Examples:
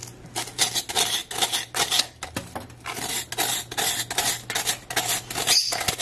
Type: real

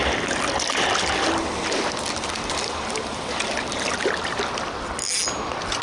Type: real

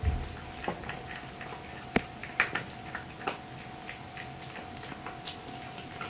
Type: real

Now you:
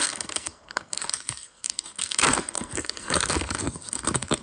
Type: fake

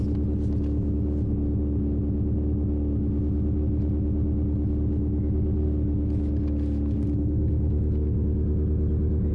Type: real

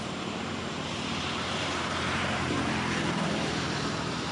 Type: fake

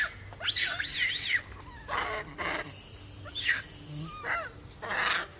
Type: real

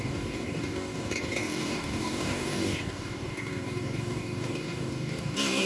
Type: fake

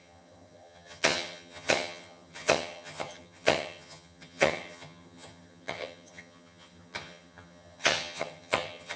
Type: fake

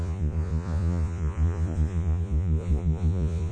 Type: fake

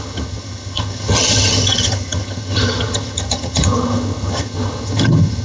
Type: fake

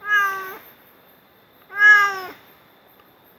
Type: fake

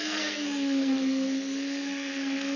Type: fake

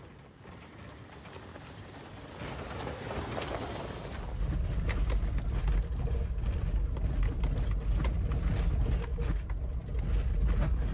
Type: real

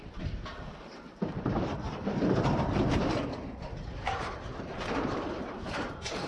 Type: fake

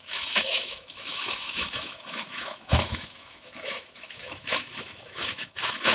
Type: fake